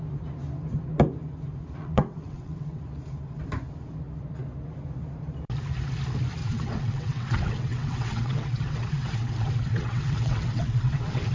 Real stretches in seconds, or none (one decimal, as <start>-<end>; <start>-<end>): 0.0-1.8; 2.8-6.4